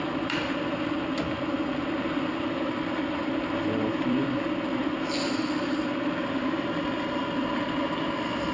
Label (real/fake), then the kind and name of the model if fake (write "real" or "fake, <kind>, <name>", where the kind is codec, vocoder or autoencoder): fake, vocoder, BigVGAN v2